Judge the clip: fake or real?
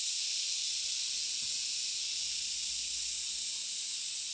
real